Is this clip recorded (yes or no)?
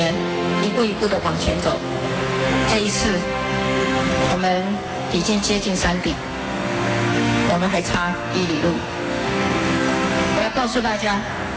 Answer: no